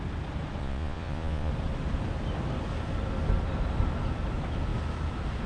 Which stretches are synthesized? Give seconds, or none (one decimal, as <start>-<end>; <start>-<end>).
0.6-1.5